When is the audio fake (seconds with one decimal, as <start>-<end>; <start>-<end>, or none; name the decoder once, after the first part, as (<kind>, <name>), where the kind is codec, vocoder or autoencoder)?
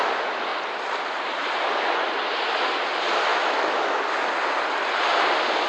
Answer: 3.3-4.0 (autoencoder, DAC-VAE)